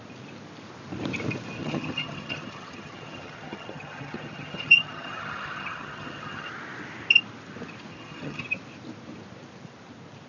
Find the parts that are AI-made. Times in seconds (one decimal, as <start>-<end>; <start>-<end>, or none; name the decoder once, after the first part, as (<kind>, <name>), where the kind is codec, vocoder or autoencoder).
1.6-6.5 (vocoder, HiFi-GAN); 7.9-8.4